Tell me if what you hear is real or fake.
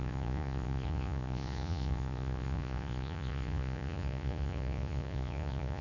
fake